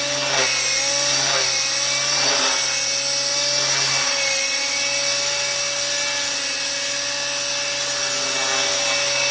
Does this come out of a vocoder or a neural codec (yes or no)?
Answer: no